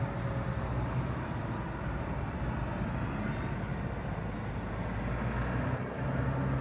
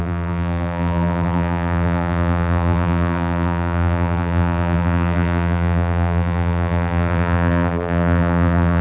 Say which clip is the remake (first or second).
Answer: second